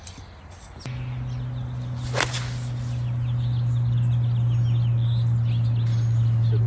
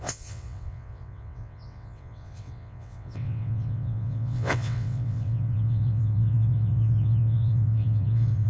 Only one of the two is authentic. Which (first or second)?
first